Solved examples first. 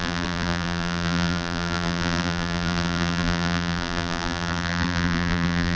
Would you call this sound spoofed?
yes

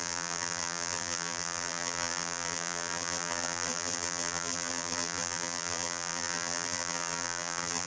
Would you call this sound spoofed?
yes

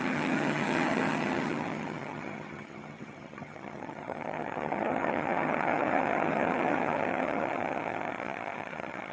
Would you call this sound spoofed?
yes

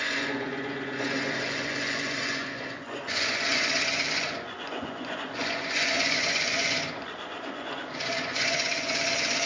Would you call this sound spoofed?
yes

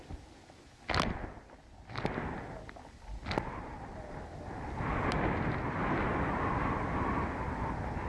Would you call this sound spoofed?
no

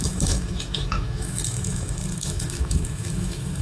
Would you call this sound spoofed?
yes